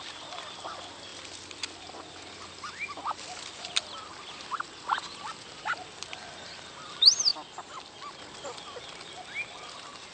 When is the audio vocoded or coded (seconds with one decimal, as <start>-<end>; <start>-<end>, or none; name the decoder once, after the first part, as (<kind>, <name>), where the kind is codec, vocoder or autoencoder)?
none